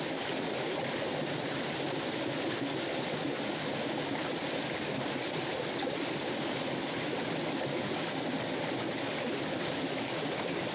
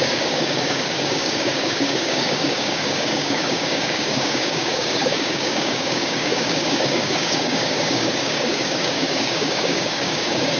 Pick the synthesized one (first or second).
second